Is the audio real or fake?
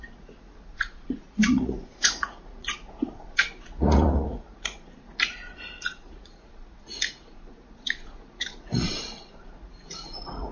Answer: fake